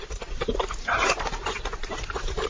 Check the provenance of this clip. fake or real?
real